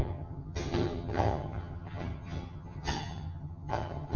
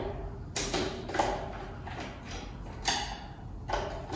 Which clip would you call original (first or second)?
second